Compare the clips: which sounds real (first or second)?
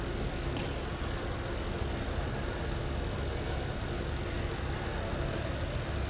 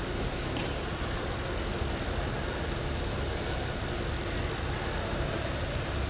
first